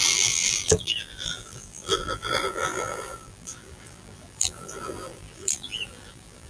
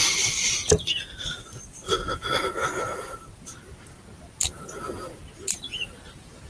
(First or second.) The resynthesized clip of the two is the first